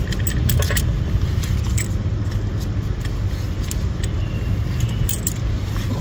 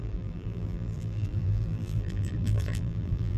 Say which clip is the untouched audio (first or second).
first